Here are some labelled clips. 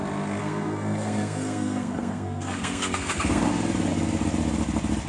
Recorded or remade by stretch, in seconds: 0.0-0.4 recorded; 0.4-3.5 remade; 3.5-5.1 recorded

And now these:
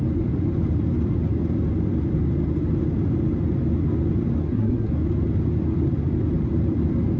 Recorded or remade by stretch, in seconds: 0.0-4.4 recorded; 4.4-4.9 remade; 4.9-7.2 recorded

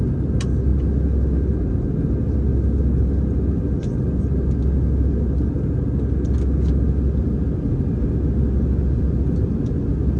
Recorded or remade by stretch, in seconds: 0.0-10.2 recorded

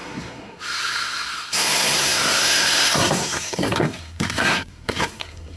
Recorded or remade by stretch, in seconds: 0.0-5.6 remade